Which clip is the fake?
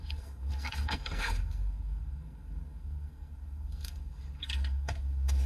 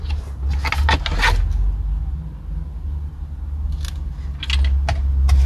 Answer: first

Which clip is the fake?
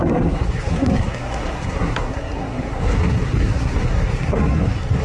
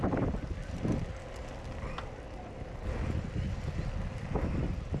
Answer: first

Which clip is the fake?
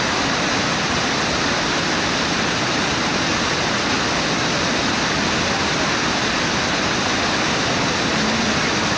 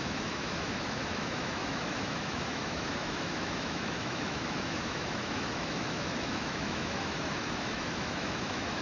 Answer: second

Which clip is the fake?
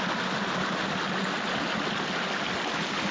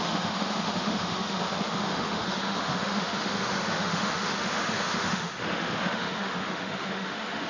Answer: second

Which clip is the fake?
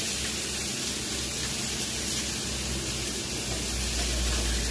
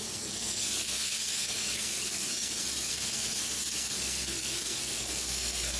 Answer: second